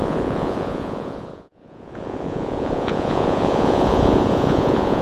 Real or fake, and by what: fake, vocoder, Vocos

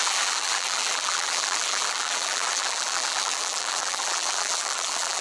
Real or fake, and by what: fake, vocoder, BigVGAN v2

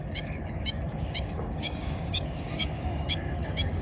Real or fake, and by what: fake, codec, DAC